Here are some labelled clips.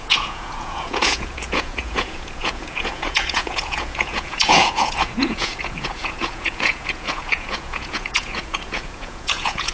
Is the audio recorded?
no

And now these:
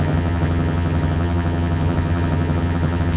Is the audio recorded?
no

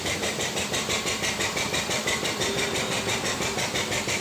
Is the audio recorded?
no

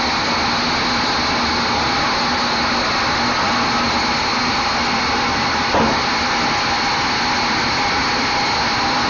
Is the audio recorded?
yes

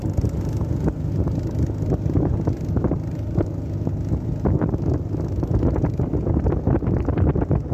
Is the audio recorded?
yes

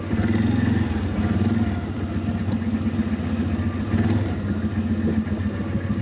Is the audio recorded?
yes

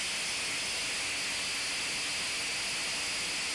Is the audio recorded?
yes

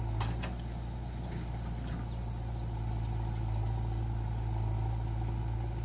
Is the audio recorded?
yes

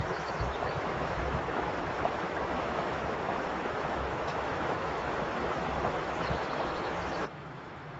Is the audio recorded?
no